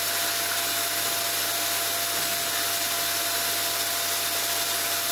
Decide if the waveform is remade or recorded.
recorded